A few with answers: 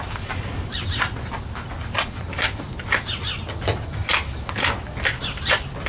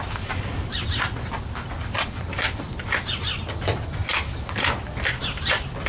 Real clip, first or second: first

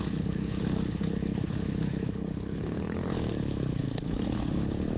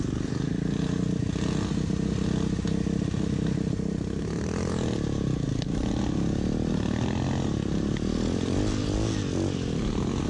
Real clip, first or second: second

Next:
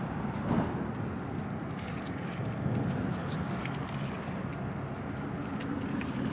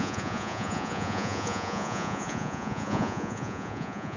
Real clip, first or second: first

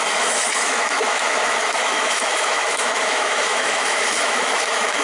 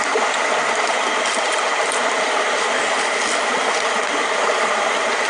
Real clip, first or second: second